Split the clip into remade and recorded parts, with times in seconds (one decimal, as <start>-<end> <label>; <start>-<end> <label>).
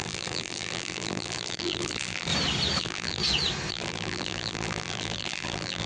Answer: 0.0-2.3 remade; 2.3-2.8 recorded; 2.8-3.2 remade; 3.2-3.7 recorded; 3.7-5.9 remade